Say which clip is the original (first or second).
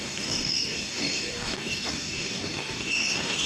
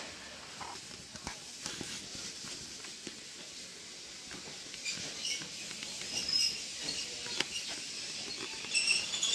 second